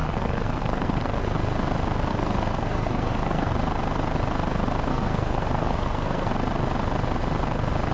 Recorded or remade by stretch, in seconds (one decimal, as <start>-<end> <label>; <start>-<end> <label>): 0.0-1.2 remade; 1.2-2.1 recorded; 2.1-3.5 remade; 3.5-4.9 recorded; 4.9-6.3 remade; 6.3-7.9 recorded